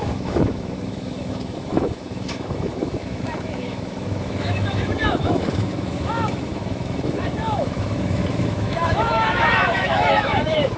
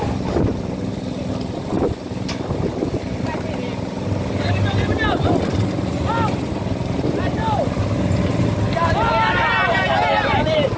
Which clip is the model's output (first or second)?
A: first